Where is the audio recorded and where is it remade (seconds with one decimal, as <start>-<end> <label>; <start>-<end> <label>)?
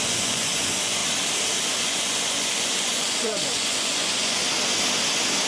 0.0-1.0 remade; 1.0-1.8 recorded; 1.8-4.4 remade; 4.4-5.5 recorded